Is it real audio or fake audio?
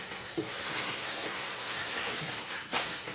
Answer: fake